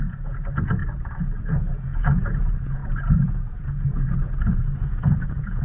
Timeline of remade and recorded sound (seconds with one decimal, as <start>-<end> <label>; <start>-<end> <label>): 0.0-0.8 remade; 0.8-1.4 recorded; 1.4-5.6 remade